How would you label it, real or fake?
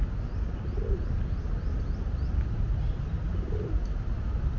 real